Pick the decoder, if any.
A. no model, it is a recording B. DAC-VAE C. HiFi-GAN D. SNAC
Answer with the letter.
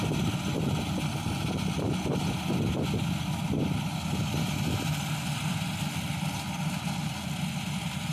A